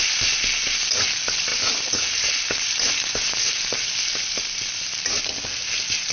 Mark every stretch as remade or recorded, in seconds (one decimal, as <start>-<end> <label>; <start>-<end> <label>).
0.0-6.1 recorded